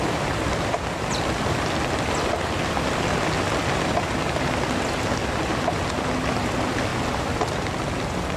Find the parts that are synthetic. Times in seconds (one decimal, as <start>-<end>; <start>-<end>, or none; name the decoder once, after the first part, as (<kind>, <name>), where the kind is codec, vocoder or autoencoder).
none